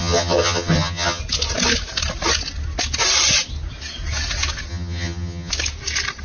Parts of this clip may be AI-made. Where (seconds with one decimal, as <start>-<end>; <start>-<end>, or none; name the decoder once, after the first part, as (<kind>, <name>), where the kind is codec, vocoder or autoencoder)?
0.0-1.2 (vocoder, HiFi-GAN); 4.7-5.5